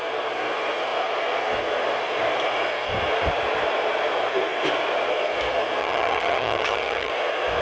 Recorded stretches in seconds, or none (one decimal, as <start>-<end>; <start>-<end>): 0.0-5.8; 7.1-7.6